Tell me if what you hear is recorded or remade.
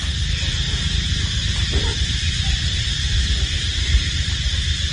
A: recorded